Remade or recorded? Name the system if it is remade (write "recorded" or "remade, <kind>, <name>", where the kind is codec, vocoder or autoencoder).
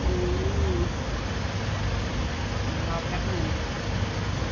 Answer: recorded